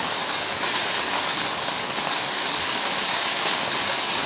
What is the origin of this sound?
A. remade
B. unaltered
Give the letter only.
A